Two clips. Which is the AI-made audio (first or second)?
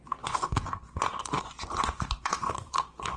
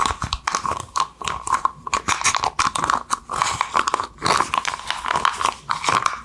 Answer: first